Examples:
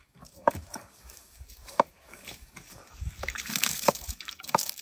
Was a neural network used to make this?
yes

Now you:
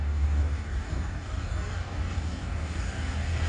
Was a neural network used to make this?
yes